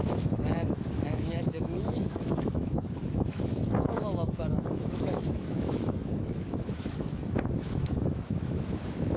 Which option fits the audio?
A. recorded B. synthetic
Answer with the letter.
B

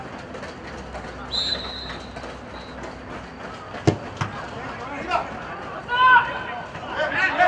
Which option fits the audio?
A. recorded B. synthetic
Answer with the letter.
A